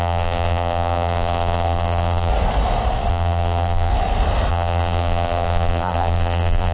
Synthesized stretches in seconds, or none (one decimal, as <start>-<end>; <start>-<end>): 0.0-2.3; 3.1-3.9; 4.5-6.7